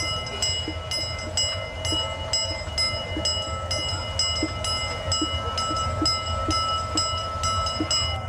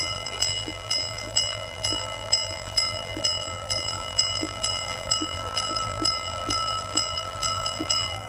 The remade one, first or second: second